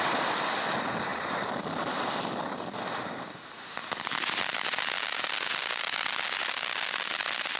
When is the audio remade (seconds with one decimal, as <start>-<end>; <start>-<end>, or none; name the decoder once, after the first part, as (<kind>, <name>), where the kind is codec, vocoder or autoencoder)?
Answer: none